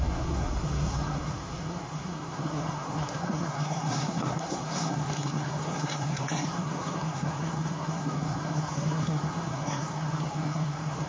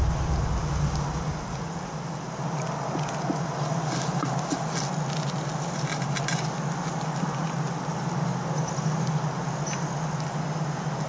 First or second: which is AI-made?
first